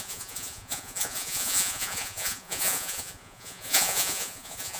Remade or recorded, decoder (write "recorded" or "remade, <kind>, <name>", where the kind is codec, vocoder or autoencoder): remade, vocoder, Vocos